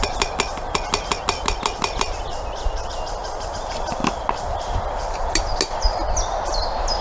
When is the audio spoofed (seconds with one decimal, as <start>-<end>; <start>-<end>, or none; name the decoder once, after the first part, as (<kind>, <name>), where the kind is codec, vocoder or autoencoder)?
none